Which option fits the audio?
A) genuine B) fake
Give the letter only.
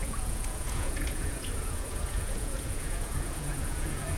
B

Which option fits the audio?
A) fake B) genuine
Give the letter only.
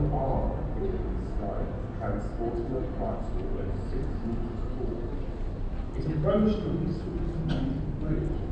B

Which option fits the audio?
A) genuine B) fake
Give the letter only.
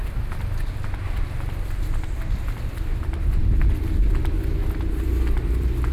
A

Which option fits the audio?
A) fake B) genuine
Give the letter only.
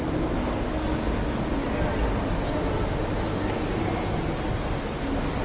B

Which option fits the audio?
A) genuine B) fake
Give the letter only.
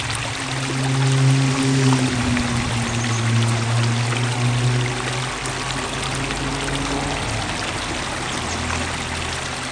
A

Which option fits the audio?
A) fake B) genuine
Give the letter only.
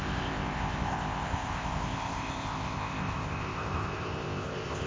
A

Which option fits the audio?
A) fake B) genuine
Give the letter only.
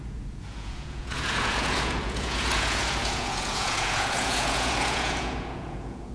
A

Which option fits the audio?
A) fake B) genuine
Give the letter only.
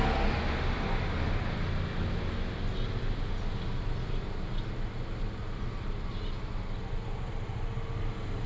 B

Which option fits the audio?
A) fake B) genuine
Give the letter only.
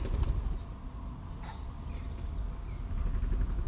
B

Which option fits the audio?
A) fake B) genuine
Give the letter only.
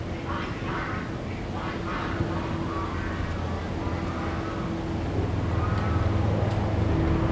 B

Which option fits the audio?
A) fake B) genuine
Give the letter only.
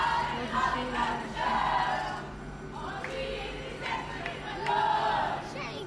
B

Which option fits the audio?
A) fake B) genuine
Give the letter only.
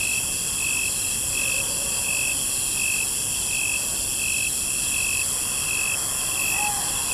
B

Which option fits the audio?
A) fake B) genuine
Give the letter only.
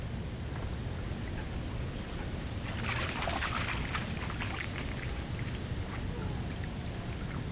B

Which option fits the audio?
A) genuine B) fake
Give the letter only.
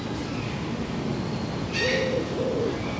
A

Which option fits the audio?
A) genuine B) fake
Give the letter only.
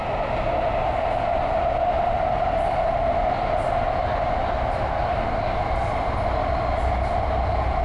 A